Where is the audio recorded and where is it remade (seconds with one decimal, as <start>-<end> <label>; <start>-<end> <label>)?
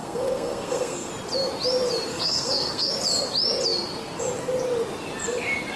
0.0-1.1 remade; 1.1-2.1 recorded; 2.1-2.9 remade; 2.9-5.8 recorded